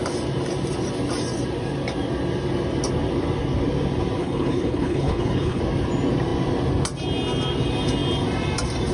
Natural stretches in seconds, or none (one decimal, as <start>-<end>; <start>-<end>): 0.0-4.2; 5.6-8.9